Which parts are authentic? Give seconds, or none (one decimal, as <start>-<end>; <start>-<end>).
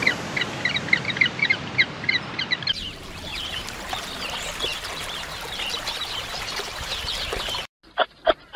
0.0-1.5; 4.0-4.7; 7.7-8.6